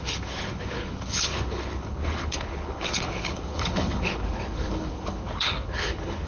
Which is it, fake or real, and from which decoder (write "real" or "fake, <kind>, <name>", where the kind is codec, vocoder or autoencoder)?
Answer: fake, codec, HILCodec